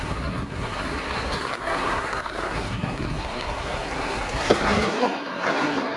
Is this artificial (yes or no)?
yes